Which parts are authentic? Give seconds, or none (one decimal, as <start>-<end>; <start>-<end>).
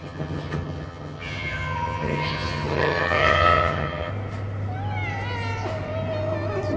4.1-6.8